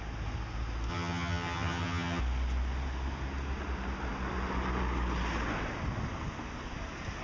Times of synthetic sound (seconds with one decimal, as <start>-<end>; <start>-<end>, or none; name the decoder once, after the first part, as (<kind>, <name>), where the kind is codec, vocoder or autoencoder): 0.9-2.2 (vocoder, HiFi-GAN)